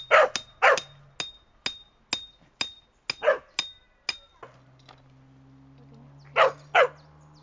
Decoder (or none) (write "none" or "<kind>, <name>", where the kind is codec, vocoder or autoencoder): none